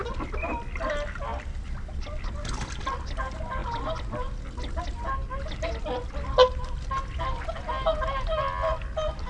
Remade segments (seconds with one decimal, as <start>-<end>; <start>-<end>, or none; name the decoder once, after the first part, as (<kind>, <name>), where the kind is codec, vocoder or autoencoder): 1.3-2.2 (vocoder, BigVGAN v2)